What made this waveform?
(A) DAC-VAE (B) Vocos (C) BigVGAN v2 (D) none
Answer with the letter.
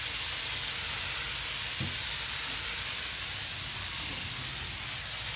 D